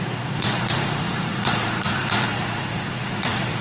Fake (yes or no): yes